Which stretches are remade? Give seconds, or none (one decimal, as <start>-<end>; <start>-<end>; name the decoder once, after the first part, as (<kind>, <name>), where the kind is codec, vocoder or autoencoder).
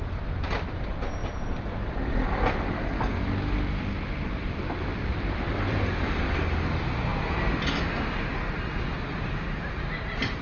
1.2-2.9 (vocoder, BigVGAN v2); 4.9-6.1